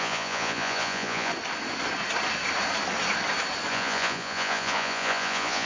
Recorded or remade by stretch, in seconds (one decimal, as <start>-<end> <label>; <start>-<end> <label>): 0.0-1.3 remade; 1.3-3.7 recorded; 3.7-5.7 remade